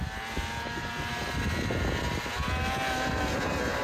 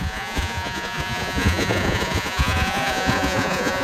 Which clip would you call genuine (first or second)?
first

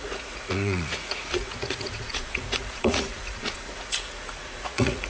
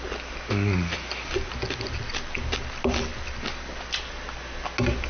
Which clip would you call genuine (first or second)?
second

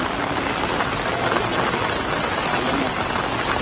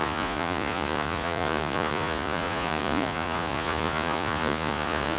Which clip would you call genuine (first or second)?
first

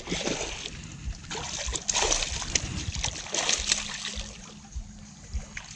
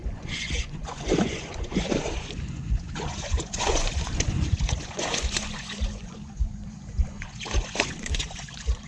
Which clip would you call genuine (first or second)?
first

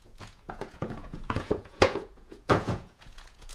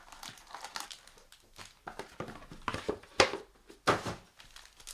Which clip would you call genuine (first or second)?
second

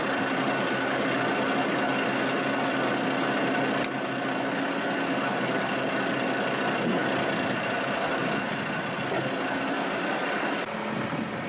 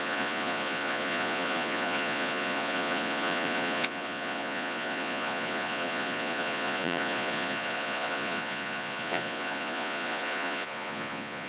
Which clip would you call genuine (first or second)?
first